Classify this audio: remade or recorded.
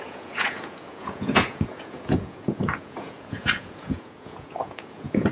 remade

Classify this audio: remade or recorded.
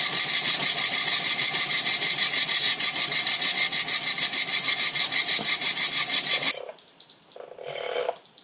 recorded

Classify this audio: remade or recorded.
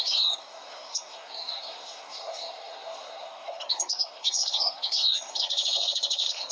remade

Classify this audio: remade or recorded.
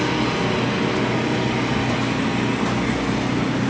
recorded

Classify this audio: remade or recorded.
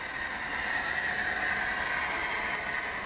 recorded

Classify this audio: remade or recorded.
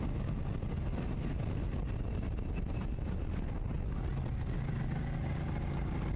recorded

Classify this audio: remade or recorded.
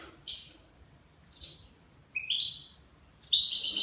recorded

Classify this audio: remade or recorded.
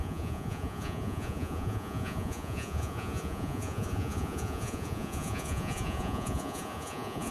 remade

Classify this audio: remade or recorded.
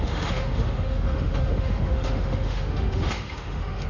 remade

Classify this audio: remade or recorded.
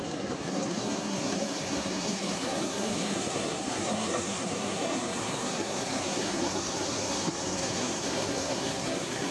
remade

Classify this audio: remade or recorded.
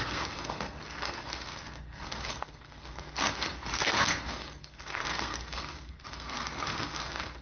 remade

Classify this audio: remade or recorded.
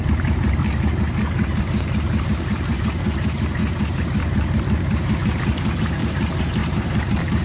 remade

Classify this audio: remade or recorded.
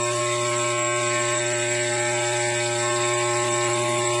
recorded